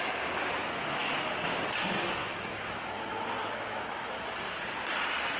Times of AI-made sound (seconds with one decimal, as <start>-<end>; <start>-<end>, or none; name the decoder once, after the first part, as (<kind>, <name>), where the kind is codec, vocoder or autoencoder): 0.6-1.3 (autoencoder, DAC-VAE); 2.2-3.0; 3.4-4.4